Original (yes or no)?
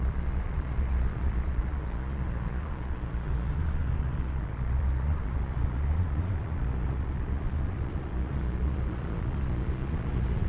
no